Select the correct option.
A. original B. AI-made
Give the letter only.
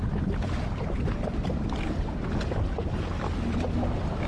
A